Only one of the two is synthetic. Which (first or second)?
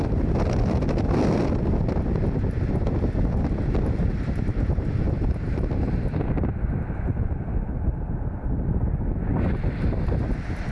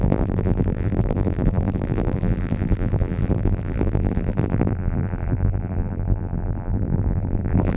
second